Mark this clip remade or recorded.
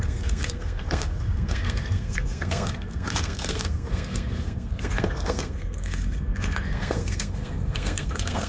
remade